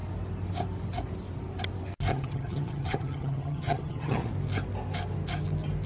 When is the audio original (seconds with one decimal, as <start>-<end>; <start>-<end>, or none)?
0.0-2.1; 4.3-5.9